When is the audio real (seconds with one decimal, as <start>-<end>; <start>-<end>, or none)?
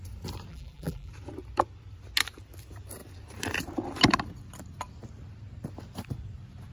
0.0-0.5; 1.1-6.7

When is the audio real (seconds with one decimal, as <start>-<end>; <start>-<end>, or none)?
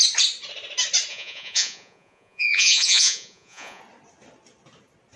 0.0-1.1; 3.8-5.2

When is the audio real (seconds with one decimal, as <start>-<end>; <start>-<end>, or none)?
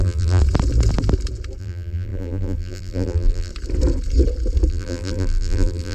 0.4-1.6; 3.5-4.7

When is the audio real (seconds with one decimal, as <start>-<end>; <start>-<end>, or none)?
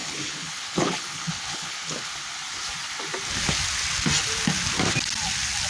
2.1-5.7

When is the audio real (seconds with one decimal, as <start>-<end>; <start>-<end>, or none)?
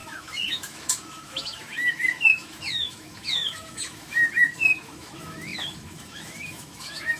none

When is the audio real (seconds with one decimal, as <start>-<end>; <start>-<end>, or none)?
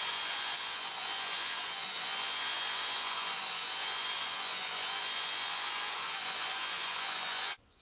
none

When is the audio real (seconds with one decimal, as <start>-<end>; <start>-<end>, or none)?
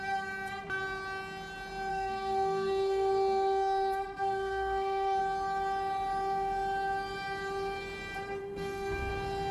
0.0-1.9; 5.2-8.4; 9.1-9.5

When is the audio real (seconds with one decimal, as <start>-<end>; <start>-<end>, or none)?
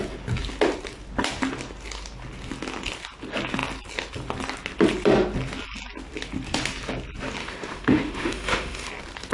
0.0-7.4; 8.9-9.3